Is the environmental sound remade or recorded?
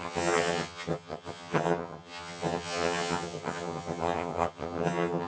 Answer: remade